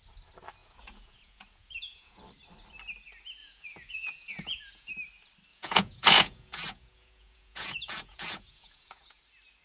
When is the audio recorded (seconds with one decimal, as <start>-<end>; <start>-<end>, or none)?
0.0-0.6; 2.2-3.4; 4.9-5.5; 9.2-9.6